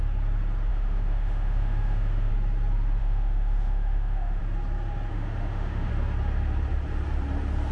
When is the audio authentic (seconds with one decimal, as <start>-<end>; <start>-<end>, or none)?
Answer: 0.0-0.7; 2.3-3.0; 4.4-5.1; 5.9-7.7